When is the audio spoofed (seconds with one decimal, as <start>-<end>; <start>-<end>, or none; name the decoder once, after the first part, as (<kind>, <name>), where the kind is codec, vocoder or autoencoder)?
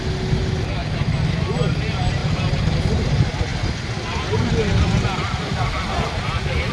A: 2.2-2.8 (vocoder, BigVGAN v2)